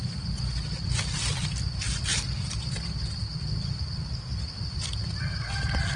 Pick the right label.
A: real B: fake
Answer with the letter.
A